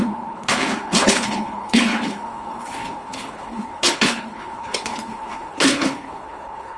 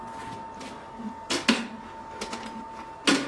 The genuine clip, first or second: second